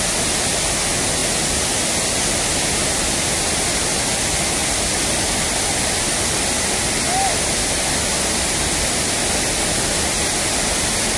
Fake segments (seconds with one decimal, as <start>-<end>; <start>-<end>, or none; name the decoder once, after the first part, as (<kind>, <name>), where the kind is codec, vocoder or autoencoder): none